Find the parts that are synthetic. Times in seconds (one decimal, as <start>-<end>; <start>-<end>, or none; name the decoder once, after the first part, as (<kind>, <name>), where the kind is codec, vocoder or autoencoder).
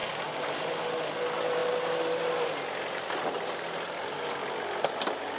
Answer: none